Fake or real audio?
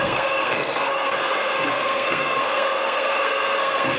fake